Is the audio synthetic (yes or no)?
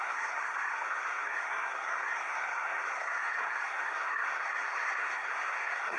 yes